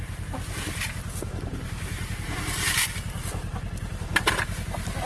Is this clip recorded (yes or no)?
yes